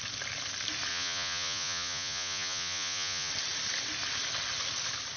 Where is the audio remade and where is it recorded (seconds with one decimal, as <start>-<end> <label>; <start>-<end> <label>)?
0.0-0.9 recorded; 0.9-3.3 remade; 3.3-5.2 recorded